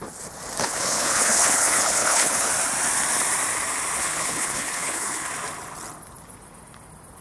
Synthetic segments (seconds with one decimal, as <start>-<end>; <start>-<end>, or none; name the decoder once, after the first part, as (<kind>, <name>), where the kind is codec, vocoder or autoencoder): 0.6-2.5 (codec, HILCodec); 4.0-5.3